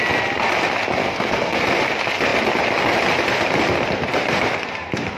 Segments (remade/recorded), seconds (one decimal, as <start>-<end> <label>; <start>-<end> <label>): 0.0-1.0 recorded; 1.0-1.6 remade; 1.6-5.2 recorded